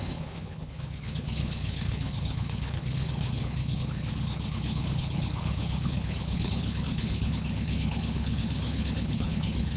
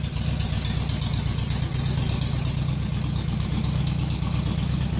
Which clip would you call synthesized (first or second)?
first